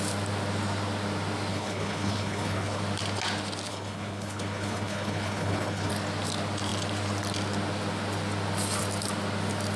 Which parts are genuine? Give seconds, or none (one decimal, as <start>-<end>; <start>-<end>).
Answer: 0.0-1.5; 2.8-3.7; 5.9-9.8